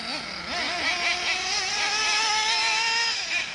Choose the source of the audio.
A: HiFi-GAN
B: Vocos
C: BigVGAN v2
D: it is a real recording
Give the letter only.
D